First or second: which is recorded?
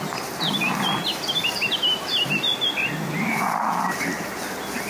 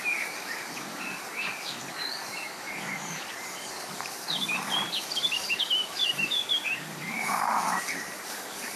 first